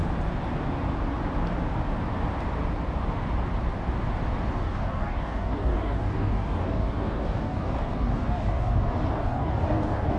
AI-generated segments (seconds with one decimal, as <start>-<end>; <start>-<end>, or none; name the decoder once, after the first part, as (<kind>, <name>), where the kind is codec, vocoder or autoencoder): 4.5-10.2 (codec, DAC)